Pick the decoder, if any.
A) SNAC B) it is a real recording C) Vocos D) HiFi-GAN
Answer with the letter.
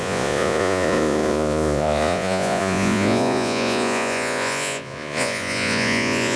C